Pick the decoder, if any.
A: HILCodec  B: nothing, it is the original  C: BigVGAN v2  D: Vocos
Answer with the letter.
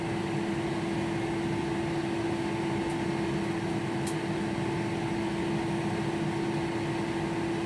B